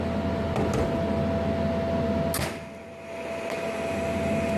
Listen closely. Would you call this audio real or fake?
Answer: real